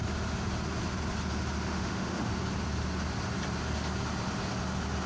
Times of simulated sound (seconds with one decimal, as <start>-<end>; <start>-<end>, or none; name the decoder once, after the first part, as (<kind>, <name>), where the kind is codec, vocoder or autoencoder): 1.7-2.3 (autoencoder, DAC-VAE)